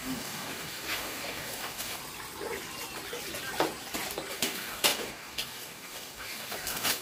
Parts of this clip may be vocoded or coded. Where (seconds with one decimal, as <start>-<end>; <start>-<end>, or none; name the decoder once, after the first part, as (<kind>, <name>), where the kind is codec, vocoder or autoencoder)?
0.0-2.0 (codec, DAC); 4.3-7.0